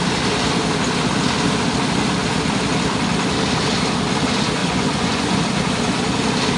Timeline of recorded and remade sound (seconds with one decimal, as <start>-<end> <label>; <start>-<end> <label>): 0.0-4.6 recorded; 4.6-5.4 remade; 5.4-6.6 recorded